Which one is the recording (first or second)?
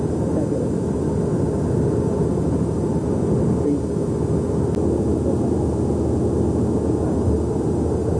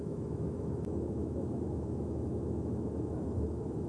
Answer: first